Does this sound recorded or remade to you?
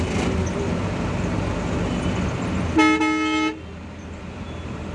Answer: recorded